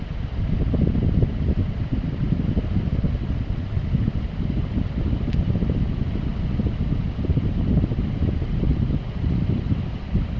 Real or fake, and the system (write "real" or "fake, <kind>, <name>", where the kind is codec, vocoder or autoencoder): real